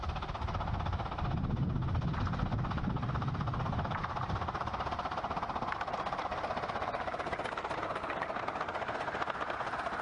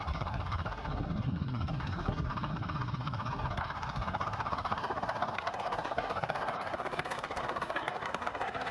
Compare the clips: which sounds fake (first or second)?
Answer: second